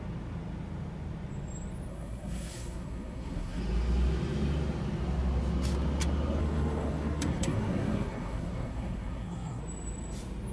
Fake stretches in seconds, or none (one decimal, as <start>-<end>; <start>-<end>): 1.9-3.6; 6.4-9.6